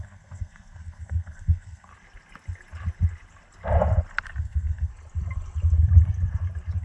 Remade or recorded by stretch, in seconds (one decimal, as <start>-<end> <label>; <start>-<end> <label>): 0.0-1.9 remade; 1.9-4.4 recorded; 4.4-4.9 remade; 4.9-6.8 recorded